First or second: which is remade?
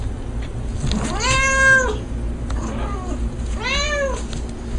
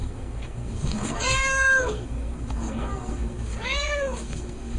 second